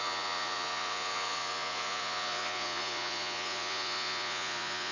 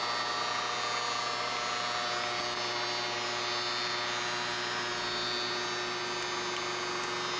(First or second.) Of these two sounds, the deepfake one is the first